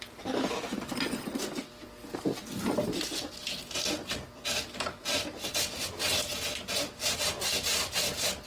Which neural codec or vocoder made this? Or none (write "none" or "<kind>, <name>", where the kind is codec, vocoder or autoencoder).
none